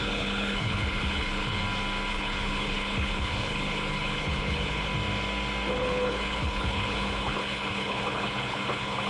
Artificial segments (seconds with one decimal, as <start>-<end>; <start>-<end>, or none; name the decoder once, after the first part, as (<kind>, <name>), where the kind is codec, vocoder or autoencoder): 0.0-1.6 (codec, HILCodec); 2.1-4.9; 5.7-9.1